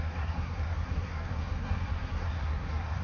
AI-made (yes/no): yes